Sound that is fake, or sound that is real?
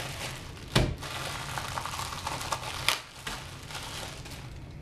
real